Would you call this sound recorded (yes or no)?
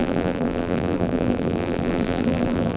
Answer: no